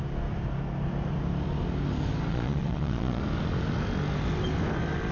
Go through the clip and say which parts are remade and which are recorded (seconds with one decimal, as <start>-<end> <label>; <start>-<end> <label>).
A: 0.0-2.3 recorded; 2.3-3.2 remade; 3.2-5.1 recorded